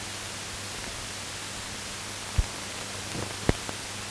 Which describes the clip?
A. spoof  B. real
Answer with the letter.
B